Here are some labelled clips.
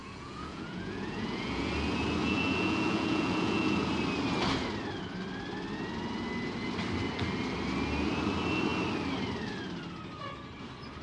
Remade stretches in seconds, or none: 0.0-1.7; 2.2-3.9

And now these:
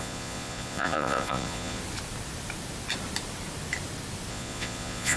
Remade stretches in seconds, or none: 0.0-1.8; 4.3-5.2

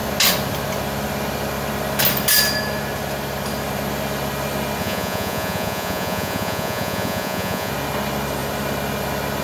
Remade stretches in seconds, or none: 4.8-7.7

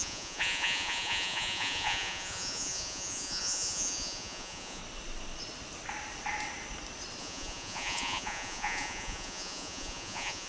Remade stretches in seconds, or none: 0.0-4.8; 7.2-10.5

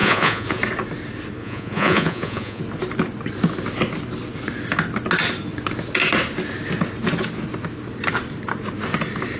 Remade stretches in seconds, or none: 0.0-0.6; 1.4-2.6

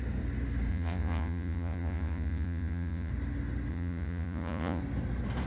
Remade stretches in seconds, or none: 0.7-3.1; 3.7-4.8

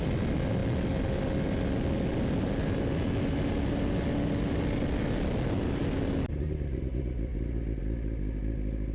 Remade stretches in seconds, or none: none